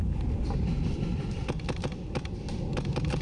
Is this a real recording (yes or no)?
yes